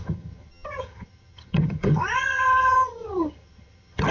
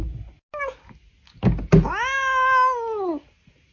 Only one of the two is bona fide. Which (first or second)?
second